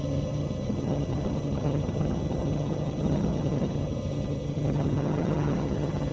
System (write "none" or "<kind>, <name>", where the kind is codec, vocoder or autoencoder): vocoder, HiFi-GAN